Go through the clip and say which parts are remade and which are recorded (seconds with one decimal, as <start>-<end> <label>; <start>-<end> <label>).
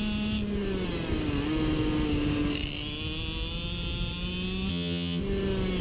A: 0.0-4.7 recorded; 4.7-5.2 remade; 5.2-5.8 recorded